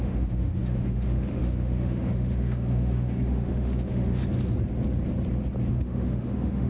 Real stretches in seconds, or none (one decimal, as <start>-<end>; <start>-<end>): 4.2-5.7